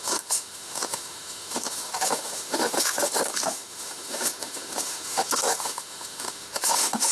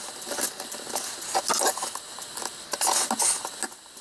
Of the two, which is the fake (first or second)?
first